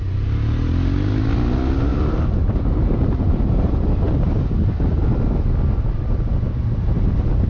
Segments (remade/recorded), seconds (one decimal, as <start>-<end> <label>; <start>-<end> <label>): 0.0-1.9 recorded; 1.9-4.5 remade; 4.5-7.5 recorded